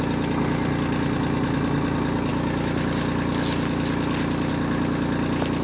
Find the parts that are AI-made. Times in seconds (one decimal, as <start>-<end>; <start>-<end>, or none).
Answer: none